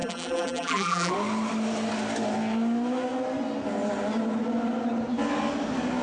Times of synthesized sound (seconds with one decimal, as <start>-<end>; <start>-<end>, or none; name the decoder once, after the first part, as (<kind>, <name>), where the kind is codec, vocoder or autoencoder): 0.0-1.1 (vocoder, BigVGAN v2)

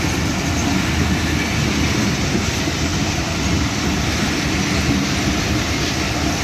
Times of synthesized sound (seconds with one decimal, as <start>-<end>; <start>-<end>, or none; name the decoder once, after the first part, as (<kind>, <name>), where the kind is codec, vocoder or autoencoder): 2.9-4.9 (vocoder, BigVGAN v2)

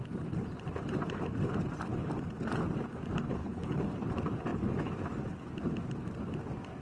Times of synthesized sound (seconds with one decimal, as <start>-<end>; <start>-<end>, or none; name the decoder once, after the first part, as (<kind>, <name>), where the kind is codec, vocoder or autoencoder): 3.4-3.9 (codec, HILCodec)

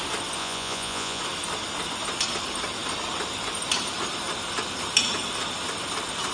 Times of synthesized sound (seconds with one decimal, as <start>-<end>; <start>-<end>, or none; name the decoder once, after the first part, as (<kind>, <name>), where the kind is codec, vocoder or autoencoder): 0.4-1.2 (vocoder, Vocos)

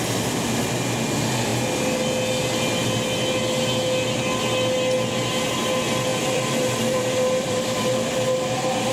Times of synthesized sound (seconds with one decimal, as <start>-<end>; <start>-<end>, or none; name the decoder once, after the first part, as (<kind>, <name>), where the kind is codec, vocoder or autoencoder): 6.1-8.9 (vocoder, BigVGAN v2)

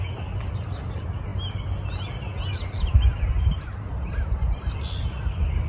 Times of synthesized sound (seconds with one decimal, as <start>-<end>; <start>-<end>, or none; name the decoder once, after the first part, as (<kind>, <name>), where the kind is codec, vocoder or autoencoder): none

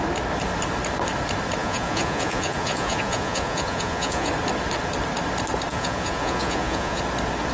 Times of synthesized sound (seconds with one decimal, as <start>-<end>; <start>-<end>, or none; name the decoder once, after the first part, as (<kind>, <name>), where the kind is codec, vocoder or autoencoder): 1.6-4.3 (vocoder, Vocos); 5.7-7.0